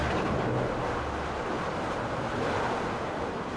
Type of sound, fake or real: real